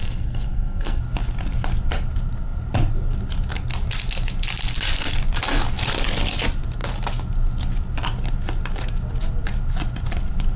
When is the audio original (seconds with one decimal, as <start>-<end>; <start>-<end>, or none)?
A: 1.0-10.6